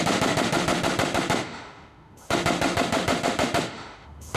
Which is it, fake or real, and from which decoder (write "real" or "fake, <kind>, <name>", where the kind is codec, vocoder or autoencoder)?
fake, autoencoder, DAC-VAE